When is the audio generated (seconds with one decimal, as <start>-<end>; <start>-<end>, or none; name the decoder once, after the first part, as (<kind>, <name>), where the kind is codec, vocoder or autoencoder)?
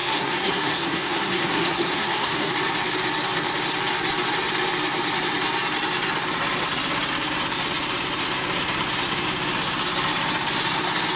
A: 0.0-2.5 (codec, SNAC)